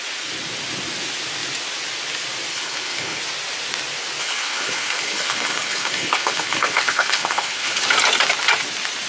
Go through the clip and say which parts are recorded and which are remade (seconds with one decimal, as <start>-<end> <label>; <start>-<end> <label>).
0.0-2.5 recorded; 2.5-3.2 remade; 3.2-4.2 recorded; 4.2-7.8 remade; 7.8-9.1 recorded